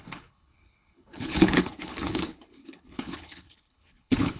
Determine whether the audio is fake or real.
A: fake